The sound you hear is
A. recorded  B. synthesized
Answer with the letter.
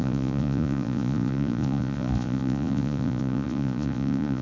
B